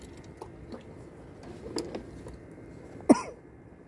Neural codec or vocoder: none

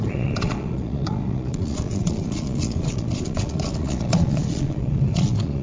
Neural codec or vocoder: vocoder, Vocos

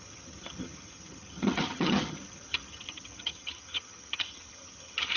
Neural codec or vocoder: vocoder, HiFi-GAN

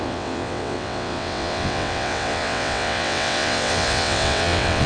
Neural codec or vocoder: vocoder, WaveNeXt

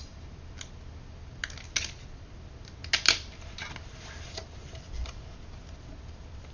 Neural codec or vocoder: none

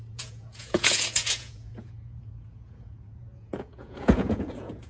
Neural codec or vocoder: vocoder, Vocos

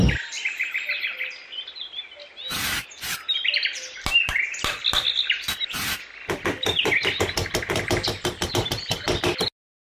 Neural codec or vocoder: none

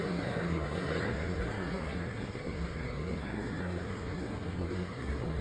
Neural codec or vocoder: codec, SNAC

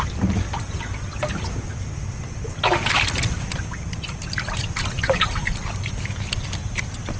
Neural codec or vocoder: none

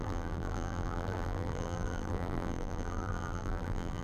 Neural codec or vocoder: vocoder, BigVGAN v2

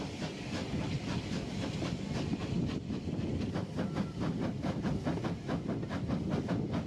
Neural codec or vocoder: none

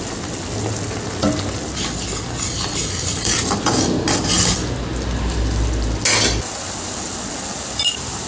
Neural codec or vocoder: none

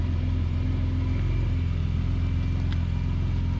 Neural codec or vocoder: none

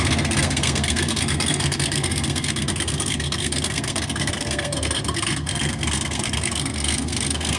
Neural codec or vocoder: codec, SNAC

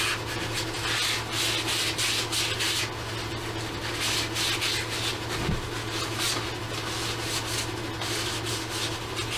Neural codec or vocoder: none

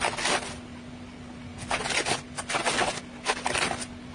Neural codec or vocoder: none